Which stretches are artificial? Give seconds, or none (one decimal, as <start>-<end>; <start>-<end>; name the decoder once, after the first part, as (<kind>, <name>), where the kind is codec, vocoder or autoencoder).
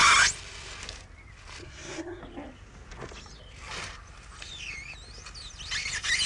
1.6-2.2 (codec, SNAC)